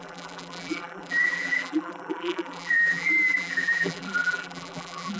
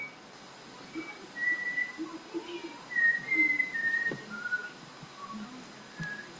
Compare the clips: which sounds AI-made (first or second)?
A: first